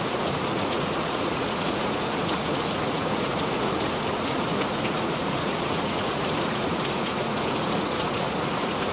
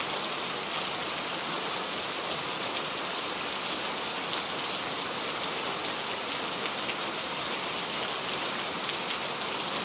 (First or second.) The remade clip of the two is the first